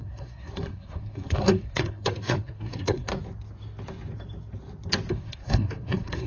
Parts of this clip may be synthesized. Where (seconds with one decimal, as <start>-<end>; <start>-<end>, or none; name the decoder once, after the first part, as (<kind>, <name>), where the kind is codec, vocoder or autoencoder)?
0.0-3.1 (codec, SNAC); 5.1-6.3